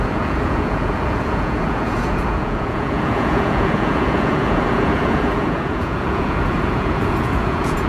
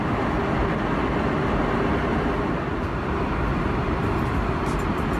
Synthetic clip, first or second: first